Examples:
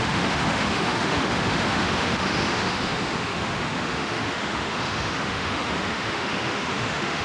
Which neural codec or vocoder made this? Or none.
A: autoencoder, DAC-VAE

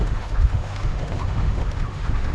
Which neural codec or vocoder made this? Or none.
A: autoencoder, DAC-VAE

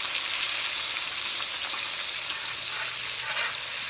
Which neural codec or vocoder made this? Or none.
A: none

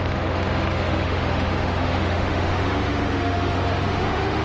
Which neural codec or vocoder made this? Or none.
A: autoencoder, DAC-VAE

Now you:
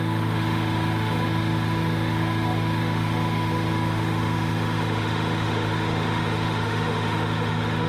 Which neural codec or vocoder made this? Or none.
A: autoencoder, DAC-VAE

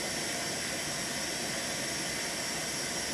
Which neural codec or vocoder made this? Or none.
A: none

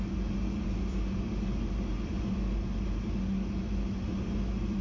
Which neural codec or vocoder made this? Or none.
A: none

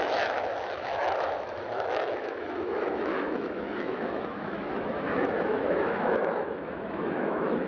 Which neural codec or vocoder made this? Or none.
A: autoencoder, DAC-VAE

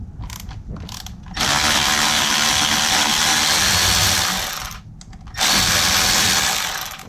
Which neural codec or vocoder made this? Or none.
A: none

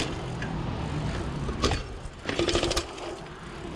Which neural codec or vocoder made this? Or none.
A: none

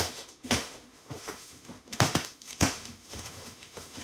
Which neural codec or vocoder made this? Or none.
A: autoencoder, DAC-VAE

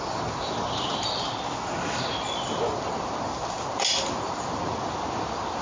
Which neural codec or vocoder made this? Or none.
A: none